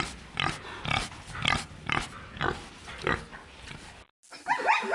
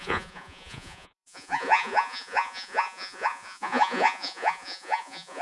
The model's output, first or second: second